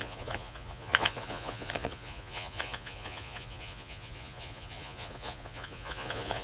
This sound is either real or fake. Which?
fake